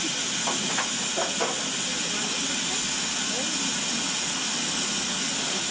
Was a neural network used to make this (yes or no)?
no